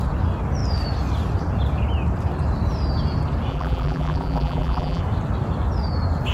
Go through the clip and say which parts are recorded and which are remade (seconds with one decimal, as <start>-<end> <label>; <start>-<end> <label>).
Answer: 0.0-3.5 recorded; 3.5-5.0 remade; 5.0-6.3 recorded

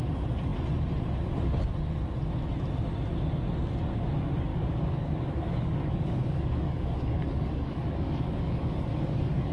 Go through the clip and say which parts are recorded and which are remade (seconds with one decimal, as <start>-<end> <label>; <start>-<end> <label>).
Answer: 0.0-4.5 recorded; 4.5-9.5 remade

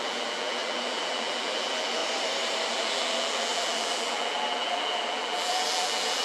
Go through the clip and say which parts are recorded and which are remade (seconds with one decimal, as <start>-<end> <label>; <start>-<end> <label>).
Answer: 0.0-2.0 remade; 2.0-2.7 recorded; 2.7-6.2 remade

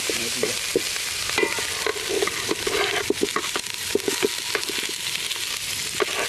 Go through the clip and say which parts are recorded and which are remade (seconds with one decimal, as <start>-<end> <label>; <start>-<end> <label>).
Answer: 0.0-3.9 remade; 3.9-5.8 recorded; 5.8-6.3 remade

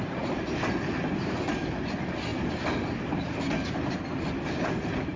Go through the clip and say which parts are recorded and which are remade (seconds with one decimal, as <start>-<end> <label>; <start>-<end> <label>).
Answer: 0.0-5.2 recorded